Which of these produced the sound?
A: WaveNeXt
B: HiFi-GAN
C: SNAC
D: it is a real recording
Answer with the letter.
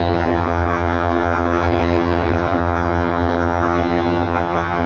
B